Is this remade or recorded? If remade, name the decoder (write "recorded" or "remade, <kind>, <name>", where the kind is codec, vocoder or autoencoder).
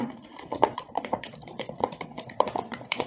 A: remade, vocoder, Vocos